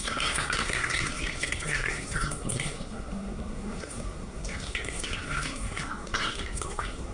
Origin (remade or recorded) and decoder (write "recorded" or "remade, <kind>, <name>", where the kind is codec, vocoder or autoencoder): remade, codec, SNAC